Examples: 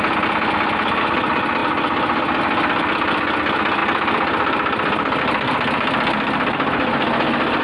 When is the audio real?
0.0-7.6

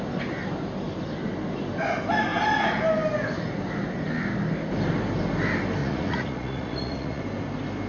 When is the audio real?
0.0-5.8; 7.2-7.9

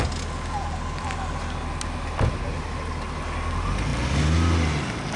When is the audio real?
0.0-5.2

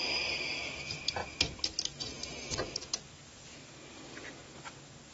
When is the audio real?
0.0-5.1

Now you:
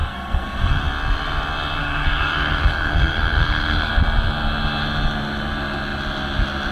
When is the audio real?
0.8-1.8; 3.9-6.7